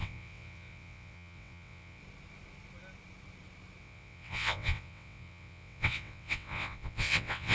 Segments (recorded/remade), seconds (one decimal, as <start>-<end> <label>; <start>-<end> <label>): 0.0-2.0 remade; 2.0-3.8 recorded; 3.8-7.5 remade